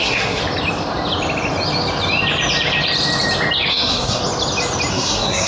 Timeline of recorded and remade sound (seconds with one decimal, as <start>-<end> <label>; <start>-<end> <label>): 0.0-0.4 remade; 0.4-3.7 recorded; 3.7-4.2 remade; 4.2-4.9 recorded; 4.9-5.5 remade